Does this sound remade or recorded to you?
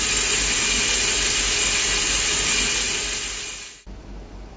recorded